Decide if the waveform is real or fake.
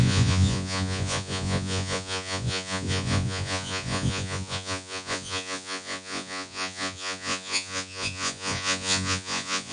fake